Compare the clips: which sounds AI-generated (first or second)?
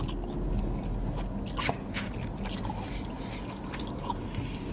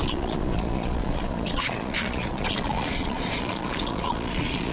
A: second